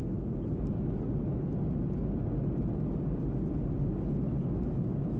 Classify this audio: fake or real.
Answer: real